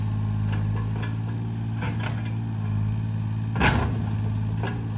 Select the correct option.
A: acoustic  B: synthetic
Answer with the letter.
A